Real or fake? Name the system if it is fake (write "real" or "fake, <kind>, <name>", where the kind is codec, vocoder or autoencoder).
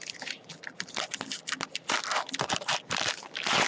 real